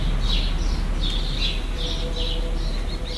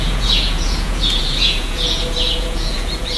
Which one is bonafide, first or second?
first